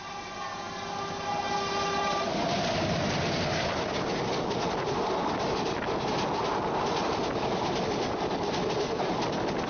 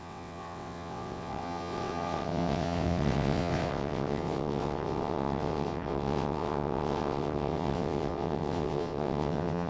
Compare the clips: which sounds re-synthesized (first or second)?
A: second